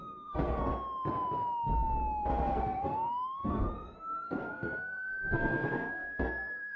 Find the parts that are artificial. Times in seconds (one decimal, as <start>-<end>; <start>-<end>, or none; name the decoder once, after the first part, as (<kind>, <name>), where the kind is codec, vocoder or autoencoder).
0.0-0.7 (codec, SNAC); 2.3-6.8